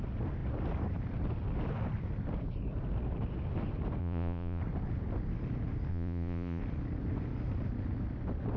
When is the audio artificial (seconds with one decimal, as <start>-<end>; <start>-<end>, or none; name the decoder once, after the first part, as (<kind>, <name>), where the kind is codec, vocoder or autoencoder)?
4.0-4.6 (vocoder, Vocos); 5.9-6.6